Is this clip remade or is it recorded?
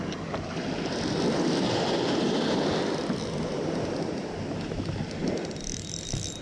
recorded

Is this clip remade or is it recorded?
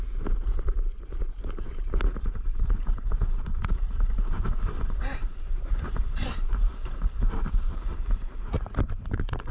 remade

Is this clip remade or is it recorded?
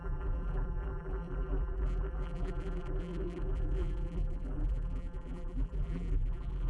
remade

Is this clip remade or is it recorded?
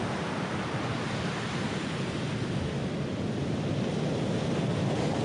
recorded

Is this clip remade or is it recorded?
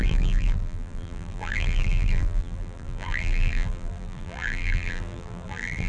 remade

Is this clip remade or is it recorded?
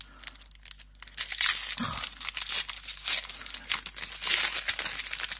recorded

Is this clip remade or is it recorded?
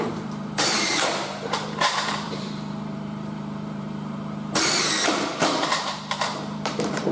remade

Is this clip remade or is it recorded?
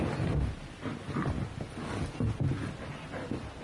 recorded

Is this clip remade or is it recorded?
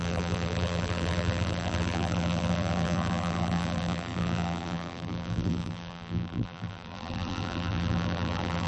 remade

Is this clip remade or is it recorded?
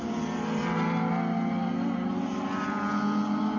recorded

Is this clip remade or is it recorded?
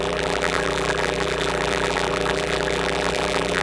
remade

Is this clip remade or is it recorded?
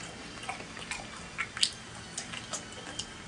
recorded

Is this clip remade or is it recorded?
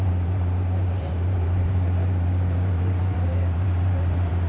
remade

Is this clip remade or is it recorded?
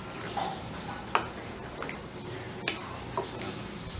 recorded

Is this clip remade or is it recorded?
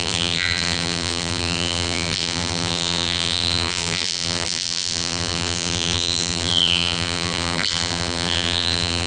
remade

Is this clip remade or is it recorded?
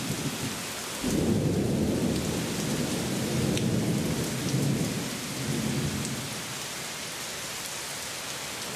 recorded